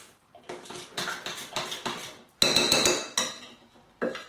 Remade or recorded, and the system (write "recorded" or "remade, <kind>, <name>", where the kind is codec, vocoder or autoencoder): recorded